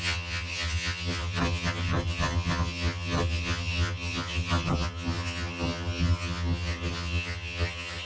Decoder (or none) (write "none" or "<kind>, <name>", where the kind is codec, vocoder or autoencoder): vocoder, HiFi-GAN